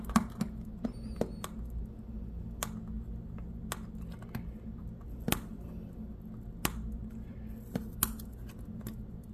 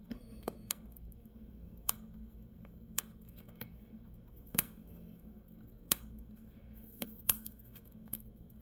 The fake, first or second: second